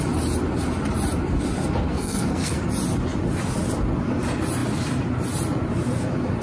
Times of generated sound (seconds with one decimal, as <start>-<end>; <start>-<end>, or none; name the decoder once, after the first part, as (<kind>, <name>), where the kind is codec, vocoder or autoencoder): 1.9-2.6 (codec, SNAC)